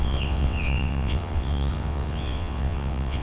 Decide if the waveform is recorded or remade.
remade